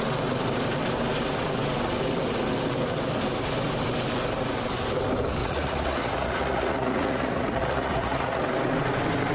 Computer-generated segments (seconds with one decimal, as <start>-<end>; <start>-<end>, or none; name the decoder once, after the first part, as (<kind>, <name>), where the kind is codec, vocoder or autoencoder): 5.4-8.4 (vocoder, Vocos)